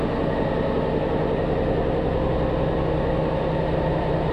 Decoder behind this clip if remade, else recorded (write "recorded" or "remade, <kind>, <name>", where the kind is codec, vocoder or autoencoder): recorded